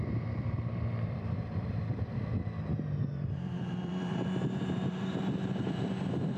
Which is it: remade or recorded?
remade